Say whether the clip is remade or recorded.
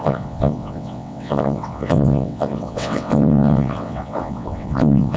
remade